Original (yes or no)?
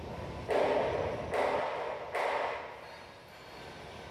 yes